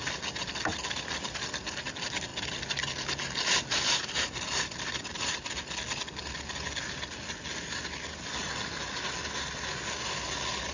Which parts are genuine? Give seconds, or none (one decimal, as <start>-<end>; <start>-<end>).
0.0-2.3; 5.4-10.7